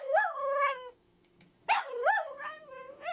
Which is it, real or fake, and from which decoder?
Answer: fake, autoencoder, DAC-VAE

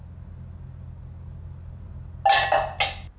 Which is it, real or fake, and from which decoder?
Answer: real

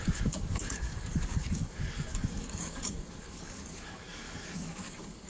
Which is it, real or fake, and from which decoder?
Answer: fake, codec, DAC